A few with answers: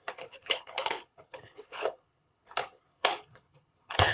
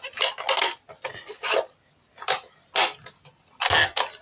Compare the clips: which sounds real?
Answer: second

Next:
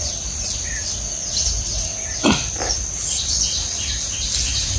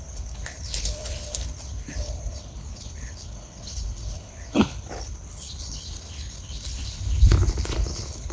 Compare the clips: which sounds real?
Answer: first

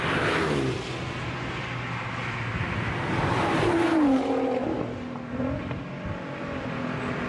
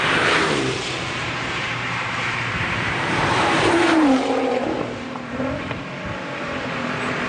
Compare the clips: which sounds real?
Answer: first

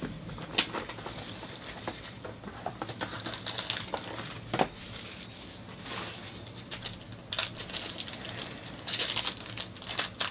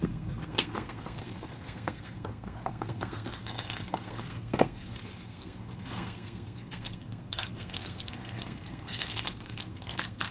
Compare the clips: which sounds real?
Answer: first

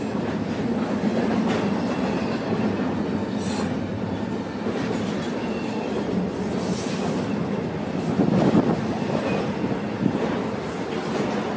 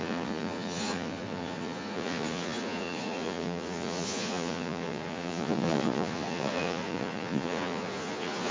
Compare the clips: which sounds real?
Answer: first